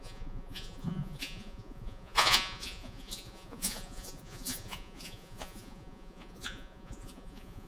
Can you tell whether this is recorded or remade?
remade